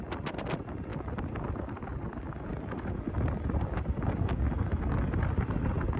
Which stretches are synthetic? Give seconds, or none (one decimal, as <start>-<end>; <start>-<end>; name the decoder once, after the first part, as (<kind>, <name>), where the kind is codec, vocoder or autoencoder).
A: none